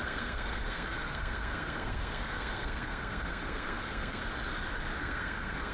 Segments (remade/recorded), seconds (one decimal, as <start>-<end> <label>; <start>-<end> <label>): 0.0-4.2 remade; 4.2-5.0 recorded; 5.0-5.7 remade

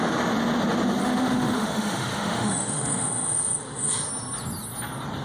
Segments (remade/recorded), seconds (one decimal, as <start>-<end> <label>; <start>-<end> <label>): 0.0-1.0 recorded; 1.0-4.1 remade; 4.1-5.2 recorded